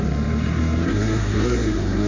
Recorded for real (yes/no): no